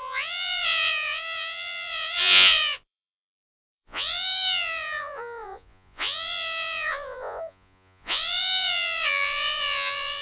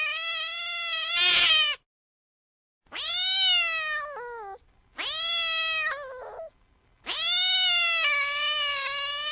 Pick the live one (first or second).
second